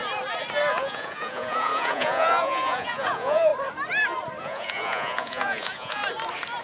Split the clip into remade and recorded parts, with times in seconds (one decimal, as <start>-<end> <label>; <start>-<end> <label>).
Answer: 0.0-0.7 recorded; 0.7-3.5 remade; 3.5-4.4 recorded; 4.4-6.0 remade; 6.0-6.6 recorded